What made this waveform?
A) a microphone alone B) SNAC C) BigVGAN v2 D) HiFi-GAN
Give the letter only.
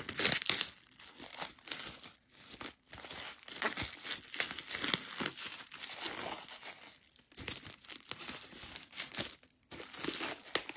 A